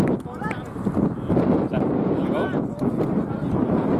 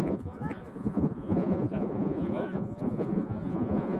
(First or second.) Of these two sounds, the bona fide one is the first